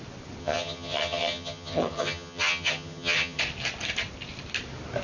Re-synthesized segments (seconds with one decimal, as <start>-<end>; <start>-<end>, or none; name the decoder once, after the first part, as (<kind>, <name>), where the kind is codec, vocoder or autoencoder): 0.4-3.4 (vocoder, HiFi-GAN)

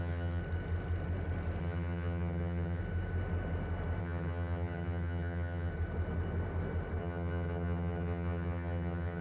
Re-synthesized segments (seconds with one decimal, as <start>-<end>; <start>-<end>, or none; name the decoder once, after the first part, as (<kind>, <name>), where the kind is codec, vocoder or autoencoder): 0.0-0.4 (vocoder, HiFi-GAN); 1.6-2.8; 4.0-5.7; 7.0-9.2

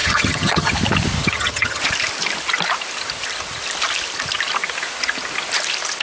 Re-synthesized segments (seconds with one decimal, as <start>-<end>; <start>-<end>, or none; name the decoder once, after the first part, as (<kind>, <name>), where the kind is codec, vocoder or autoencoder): 0.0-0.7 (vocoder, HiFi-GAN); 1.2-1.8

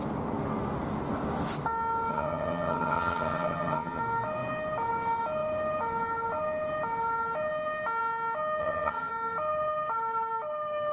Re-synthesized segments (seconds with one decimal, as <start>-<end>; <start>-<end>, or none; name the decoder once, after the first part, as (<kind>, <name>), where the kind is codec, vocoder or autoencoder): 2.1-4.0 (vocoder, HiFi-GAN); 8.6-9.1